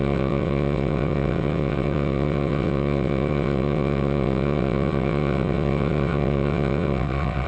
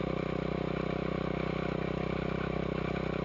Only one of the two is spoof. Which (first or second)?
first